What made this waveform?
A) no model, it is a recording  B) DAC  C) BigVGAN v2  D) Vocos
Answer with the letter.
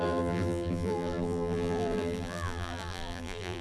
C